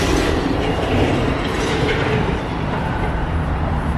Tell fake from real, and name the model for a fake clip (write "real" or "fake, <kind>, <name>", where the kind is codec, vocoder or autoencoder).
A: fake, vocoder, BigVGAN v2